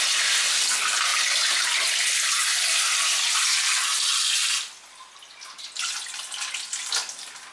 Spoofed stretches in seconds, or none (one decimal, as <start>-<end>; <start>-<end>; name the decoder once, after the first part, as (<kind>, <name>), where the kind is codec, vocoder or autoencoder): none